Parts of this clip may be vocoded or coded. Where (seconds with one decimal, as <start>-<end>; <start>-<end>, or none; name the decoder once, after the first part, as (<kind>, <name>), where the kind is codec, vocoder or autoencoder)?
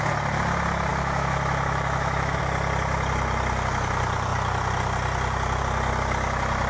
0.9-2.4 (autoencoder, DAC-VAE)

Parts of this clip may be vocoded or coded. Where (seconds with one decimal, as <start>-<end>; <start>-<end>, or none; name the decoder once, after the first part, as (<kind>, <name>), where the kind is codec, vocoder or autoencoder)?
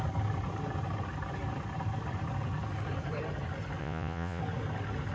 3.8-4.4 (vocoder, Vocos)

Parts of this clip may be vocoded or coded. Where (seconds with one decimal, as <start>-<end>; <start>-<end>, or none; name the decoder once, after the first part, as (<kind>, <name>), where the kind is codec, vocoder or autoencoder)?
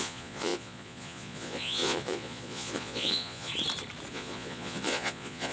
0.0-3.5 (vocoder, Vocos); 4.1-5.5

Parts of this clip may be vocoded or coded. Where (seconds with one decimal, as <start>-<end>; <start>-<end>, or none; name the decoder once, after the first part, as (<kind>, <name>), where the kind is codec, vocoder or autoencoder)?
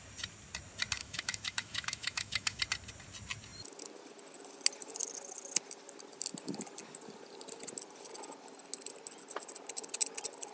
1.0-2.6 (autoencoder, DAC-VAE)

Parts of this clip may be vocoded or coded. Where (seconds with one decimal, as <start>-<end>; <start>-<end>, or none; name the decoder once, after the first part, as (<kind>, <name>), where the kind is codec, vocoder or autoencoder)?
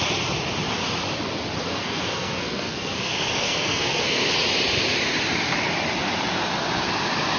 1.7-4.3 (codec, SNAC)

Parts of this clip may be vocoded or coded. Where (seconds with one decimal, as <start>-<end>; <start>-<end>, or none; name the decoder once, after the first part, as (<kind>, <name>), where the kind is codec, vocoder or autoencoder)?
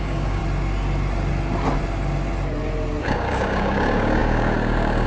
0.0-0.4 (codec, DAC); 3.0-5.1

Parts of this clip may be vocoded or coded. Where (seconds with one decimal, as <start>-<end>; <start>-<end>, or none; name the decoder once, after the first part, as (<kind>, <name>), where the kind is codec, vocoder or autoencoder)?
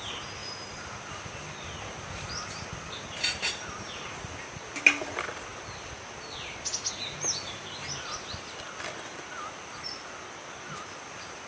0.4-4.8 (vocoder, BigVGAN v2)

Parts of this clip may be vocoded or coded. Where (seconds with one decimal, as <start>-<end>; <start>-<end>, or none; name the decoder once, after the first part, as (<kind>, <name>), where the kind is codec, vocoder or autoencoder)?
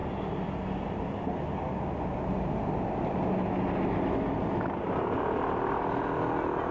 0.0-0.5 (vocoder, BigVGAN v2)